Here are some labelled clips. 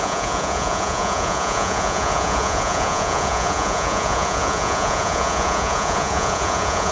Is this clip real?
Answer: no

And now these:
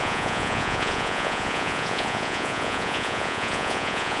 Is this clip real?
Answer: no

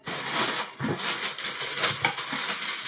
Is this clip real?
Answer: yes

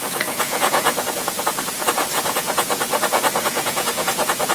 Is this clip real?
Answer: no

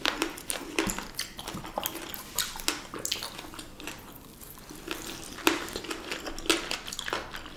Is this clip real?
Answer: yes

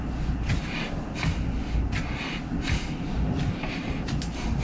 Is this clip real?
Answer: yes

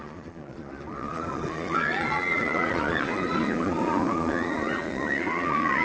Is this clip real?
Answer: no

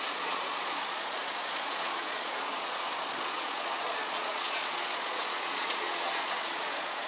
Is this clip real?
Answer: no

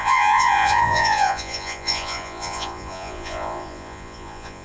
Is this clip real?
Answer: no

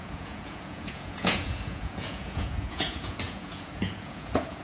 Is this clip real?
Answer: no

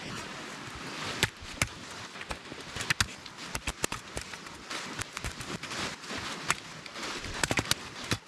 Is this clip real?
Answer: yes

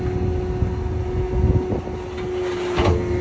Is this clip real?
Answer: yes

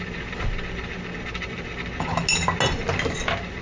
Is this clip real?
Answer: yes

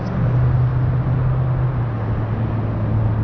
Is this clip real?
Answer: yes